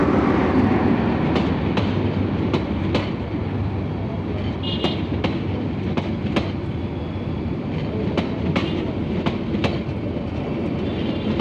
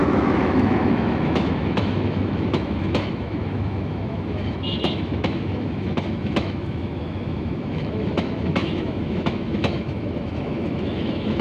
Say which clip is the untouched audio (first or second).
first